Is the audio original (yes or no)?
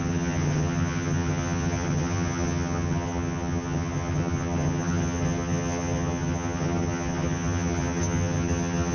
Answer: no